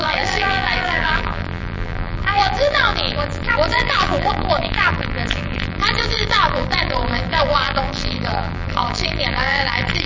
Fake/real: fake